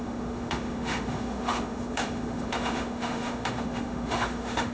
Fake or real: fake